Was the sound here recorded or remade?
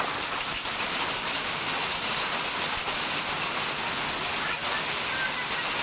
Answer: recorded